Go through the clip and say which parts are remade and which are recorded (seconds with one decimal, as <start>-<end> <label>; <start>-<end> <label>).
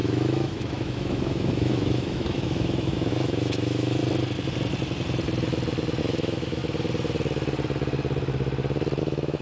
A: 0.0-4.0 remade; 4.0-6.0 recorded; 6.0-6.6 remade; 6.6-9.0 recorded; 9.0-9.4 remade